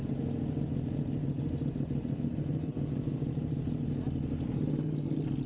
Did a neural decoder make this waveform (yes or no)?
no